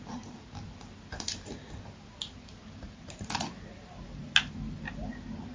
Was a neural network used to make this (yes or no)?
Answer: no